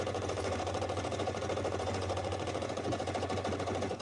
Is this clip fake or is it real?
fake